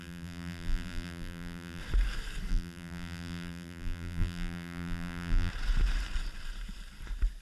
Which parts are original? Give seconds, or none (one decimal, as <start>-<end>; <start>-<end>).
1.8-2.5; 5.5-7.4